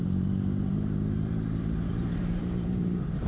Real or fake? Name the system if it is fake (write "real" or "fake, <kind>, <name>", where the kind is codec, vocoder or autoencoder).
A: fake, vocoder, BigVGAN v2